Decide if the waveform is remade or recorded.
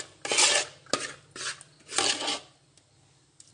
recorded